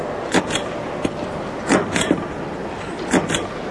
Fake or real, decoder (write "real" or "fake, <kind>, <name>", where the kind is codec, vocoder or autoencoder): real